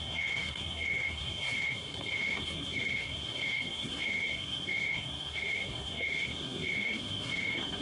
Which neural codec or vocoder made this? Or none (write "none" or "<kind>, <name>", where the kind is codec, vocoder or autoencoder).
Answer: codec, SNAC